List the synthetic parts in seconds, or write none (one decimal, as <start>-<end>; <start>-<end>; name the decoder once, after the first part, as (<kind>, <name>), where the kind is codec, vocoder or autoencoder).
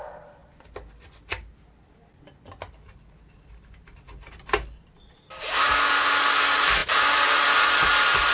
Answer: none